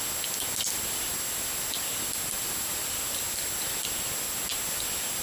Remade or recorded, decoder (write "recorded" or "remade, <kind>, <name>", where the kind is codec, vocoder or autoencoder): recorded